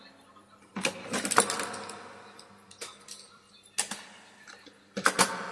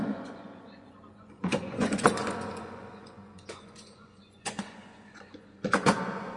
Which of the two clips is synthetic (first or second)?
second